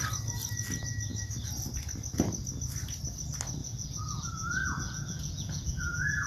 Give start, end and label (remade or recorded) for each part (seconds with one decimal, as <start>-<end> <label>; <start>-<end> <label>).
0.0-3.6 recorded; 3.6-6.3 remade